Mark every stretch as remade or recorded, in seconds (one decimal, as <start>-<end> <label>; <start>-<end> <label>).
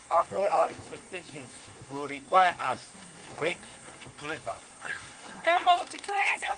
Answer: 0.0-6.6 remade